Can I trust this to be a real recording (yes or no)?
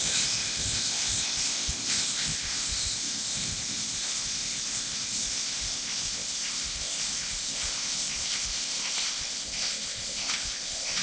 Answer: no